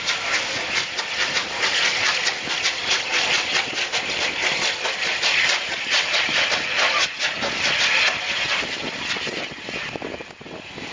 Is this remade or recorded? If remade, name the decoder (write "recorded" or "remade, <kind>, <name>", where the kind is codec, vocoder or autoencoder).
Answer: recorded